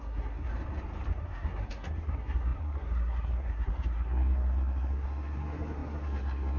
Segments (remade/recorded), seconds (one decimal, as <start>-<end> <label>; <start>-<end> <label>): 0.0-0.5 remade; 0.5-1.1 recorded; 1.1-6.6 remade